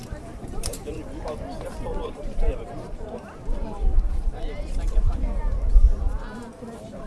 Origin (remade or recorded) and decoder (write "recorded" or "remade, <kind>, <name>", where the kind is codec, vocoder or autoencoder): remade, vocoder, BigVGAN v2